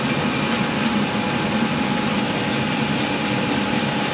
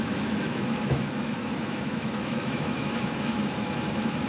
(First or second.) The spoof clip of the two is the second